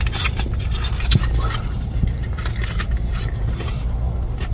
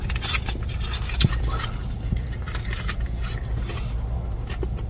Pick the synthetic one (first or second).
first